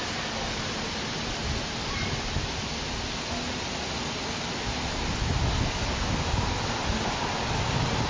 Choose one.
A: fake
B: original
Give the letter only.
B